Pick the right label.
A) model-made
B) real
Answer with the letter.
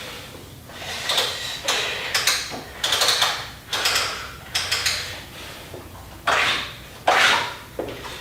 B